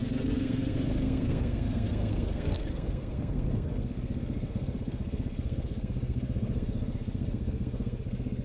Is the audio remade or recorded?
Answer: remade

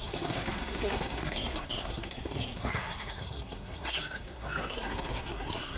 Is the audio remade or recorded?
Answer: remade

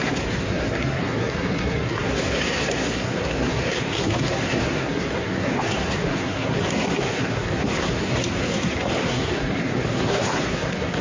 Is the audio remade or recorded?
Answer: remade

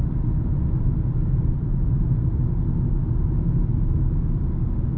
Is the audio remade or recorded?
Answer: recorded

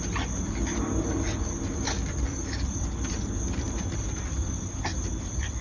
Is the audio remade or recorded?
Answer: recorded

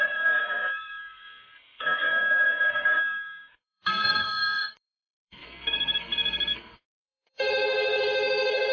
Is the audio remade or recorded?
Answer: remade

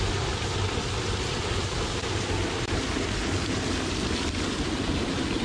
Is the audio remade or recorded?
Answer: recorded